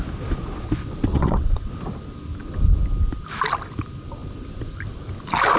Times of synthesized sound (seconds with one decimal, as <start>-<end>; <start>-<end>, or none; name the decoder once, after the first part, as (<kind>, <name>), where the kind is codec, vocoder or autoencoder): 1.1-1.7 (vocoder, WaveNeXt)